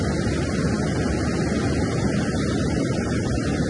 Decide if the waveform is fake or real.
real